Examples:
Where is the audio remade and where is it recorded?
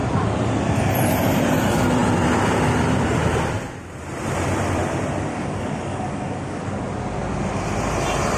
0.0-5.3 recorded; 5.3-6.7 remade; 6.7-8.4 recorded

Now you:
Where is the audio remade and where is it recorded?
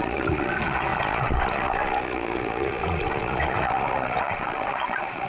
0.0-5.3 remade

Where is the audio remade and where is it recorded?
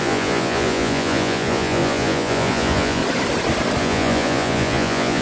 0.0-3.0 remade; 3.0-3.8 recorded; 3.8-5.2 remade